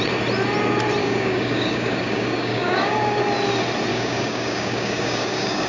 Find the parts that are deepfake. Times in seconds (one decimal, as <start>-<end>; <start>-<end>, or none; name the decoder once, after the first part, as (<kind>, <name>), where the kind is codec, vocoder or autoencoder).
1.0-3.2 (codec, DAC); 3.9-5.7